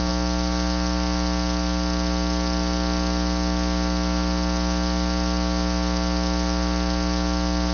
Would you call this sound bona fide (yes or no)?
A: yes